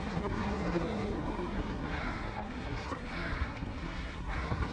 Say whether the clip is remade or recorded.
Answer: remade